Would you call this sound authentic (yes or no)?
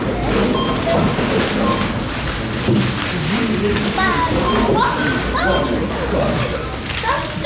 yes